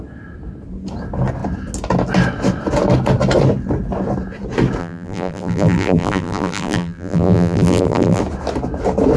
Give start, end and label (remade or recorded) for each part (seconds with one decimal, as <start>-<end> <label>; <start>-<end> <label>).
0.0-4.8 recorded; 4.8-8.2 remade; 8.2-9.2 recorded